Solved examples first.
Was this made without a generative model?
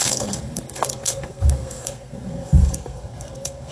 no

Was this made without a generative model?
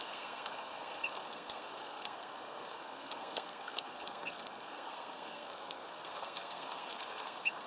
no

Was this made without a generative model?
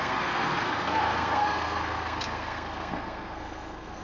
no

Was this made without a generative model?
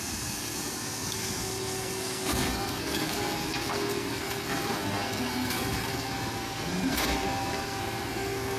no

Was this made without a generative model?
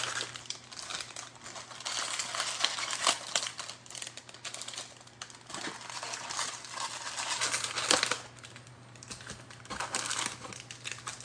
yes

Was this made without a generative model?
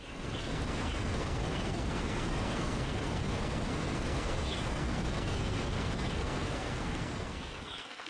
no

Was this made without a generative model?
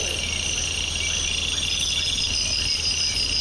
yes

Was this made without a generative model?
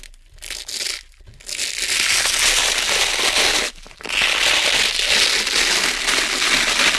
yes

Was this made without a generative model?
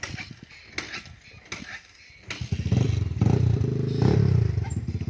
yes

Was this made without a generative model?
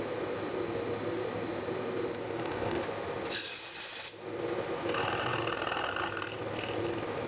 yes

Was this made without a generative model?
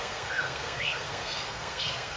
no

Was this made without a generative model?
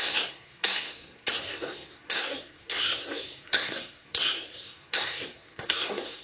no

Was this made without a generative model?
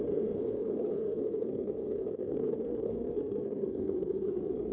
no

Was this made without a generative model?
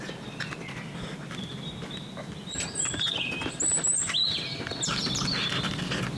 yes